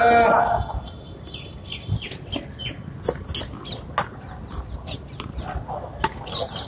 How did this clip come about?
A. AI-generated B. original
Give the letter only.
B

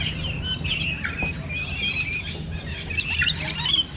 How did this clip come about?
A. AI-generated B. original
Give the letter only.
B